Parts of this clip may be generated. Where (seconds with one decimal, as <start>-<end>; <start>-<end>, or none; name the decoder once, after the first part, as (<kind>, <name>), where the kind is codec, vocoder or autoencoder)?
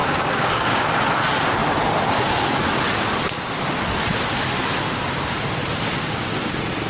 0.0-1.0 (codec, DAC); 6.0-6.5